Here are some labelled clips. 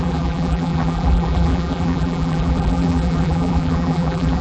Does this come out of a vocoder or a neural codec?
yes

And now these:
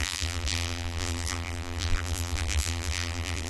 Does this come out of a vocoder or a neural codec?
yes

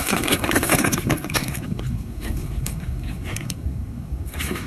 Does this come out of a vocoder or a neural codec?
yes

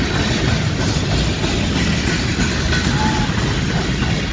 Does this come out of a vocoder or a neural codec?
no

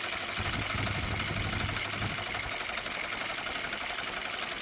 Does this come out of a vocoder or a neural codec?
no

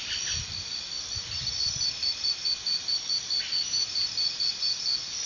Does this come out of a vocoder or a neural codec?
yes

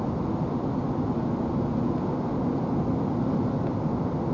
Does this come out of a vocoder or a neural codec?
no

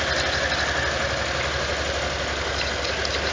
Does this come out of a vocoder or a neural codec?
no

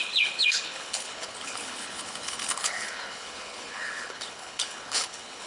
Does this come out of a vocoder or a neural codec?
yes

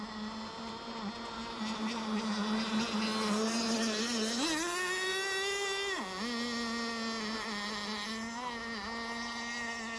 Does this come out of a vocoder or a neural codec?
no